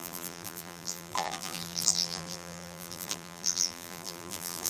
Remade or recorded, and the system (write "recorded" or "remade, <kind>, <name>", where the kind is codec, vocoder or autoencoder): remade, vocoder, BigVGAN v2